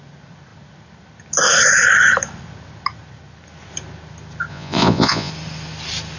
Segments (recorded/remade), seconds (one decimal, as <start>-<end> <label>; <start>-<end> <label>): 0.0-4.5 recorded; 4.5-5.3 remade; 5.3-6.2 recorded